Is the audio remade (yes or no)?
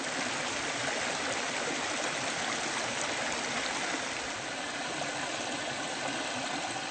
no